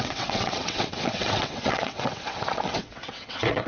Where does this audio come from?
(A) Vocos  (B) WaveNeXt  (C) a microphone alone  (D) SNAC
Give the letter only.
B